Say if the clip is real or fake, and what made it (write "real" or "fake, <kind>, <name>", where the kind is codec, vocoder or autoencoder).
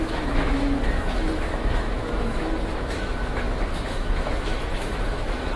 fake, autoencoder, DAC-VAE